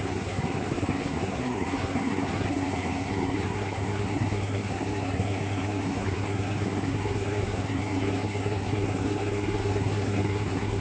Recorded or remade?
remade